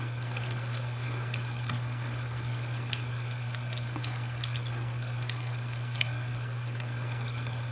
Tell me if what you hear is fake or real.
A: fake